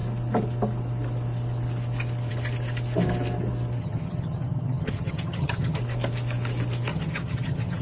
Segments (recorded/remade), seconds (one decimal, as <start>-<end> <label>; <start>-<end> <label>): 0.0-3.8 recorded; 3.8-5.8 remade; 5.8-6.9 recorded; 6.9-7.8 remade